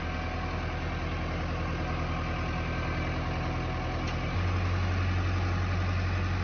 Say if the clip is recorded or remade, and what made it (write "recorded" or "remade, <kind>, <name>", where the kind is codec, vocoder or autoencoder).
recorded